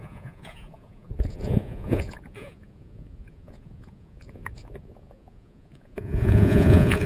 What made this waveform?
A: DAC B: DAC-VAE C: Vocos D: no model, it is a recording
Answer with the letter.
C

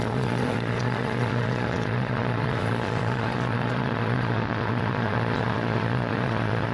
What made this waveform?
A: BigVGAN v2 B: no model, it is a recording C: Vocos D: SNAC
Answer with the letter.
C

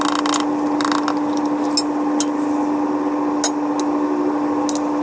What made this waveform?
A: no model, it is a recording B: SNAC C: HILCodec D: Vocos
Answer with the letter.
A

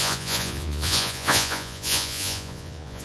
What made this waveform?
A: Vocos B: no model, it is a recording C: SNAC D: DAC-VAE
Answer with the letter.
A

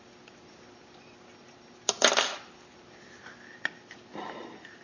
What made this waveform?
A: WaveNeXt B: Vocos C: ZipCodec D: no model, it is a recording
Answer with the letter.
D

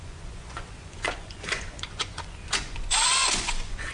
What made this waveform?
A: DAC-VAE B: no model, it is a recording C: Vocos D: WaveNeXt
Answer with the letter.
C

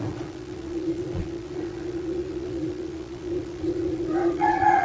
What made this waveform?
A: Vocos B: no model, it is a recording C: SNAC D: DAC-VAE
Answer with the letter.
A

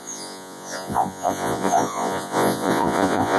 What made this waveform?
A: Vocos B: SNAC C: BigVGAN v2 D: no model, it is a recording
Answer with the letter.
A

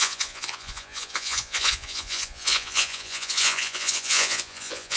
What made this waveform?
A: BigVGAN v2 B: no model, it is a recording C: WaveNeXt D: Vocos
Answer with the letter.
D